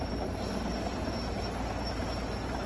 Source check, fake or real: real